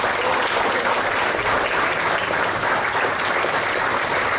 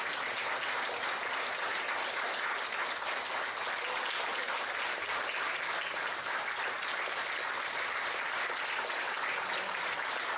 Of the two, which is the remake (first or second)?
first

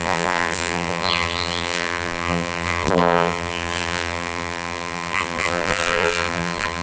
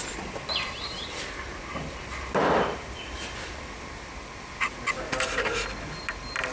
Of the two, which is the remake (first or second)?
first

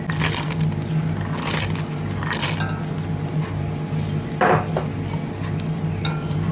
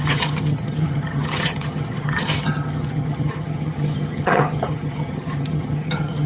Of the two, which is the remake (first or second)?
second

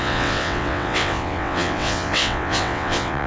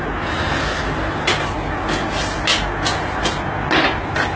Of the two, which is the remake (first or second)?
first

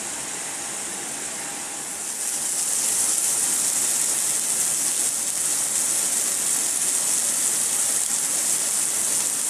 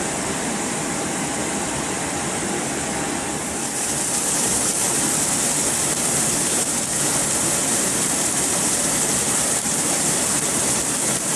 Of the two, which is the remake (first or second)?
second